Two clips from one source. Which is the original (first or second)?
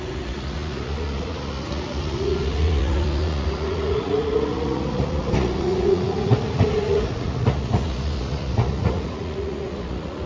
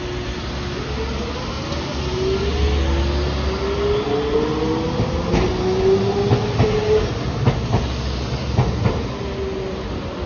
second